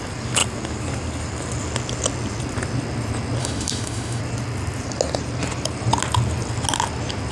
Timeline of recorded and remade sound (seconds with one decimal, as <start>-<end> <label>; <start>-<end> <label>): 0.0-3.4 recorded; 3.4-4.2 remade; 4.2-7.3 recorded